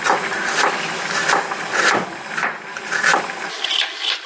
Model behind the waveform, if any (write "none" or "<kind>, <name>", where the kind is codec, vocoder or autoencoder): none